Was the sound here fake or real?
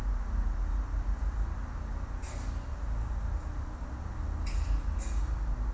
real